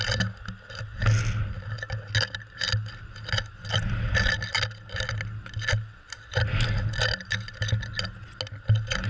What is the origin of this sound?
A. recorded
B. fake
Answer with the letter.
A